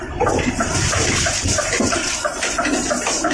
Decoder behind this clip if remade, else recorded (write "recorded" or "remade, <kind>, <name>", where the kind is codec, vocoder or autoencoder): remade, vocoder, BigVGAN v2